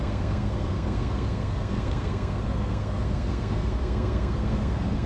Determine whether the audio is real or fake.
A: fake